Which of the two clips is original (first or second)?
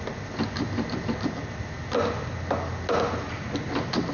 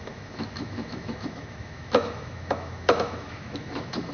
first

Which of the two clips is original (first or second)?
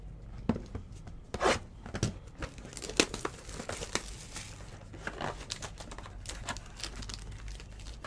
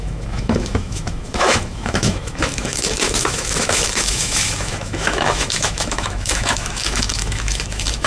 first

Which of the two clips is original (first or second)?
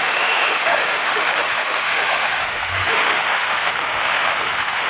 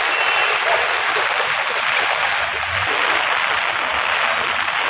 second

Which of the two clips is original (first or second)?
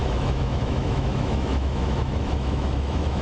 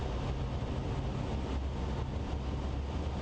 second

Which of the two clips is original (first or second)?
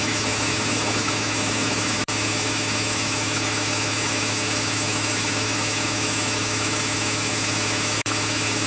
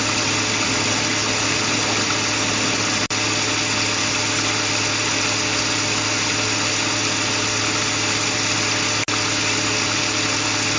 second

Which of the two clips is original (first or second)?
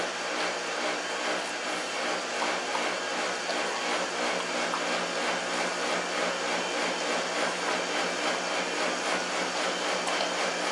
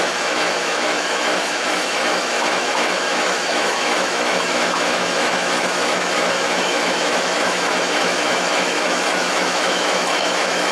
first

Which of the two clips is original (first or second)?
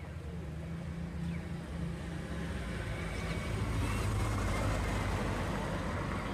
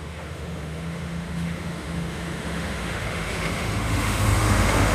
first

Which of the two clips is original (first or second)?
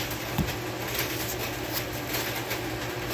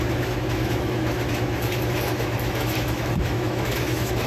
first